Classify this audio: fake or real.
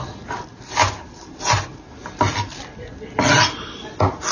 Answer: real